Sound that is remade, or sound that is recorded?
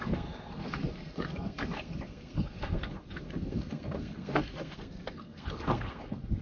remade